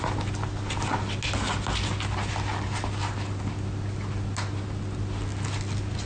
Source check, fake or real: real